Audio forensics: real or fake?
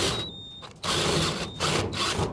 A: real